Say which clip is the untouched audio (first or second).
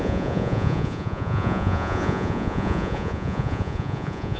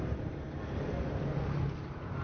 second